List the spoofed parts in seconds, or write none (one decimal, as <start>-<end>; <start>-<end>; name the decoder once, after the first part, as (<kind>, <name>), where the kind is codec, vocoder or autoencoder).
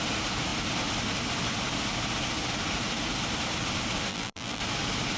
4.1-4.6 (vocoder, BigVGAN v2)